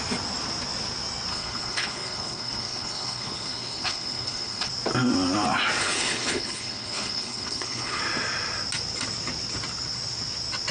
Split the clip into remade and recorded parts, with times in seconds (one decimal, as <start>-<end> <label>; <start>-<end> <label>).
0.0-1.3 recorded; 1.3-4.7 remade; 4.7-5.8 recorded; 5.8-8.0 remade; 8.0-10.7 recorded